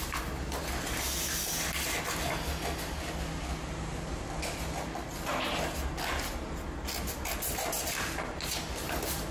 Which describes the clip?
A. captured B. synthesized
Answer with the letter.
A